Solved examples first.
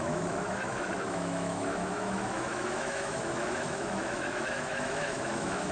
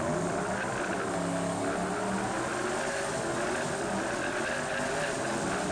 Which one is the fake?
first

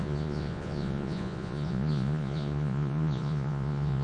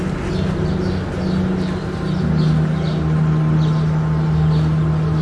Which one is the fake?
first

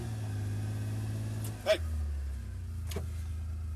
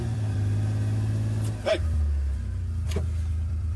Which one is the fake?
second